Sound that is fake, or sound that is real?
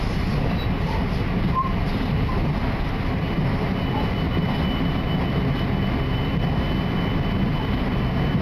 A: real